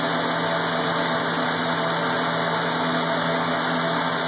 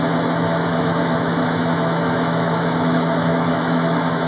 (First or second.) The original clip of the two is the first